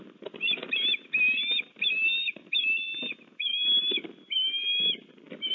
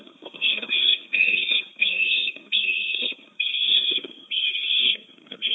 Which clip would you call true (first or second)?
first